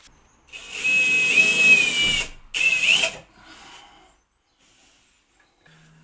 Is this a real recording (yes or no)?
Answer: yes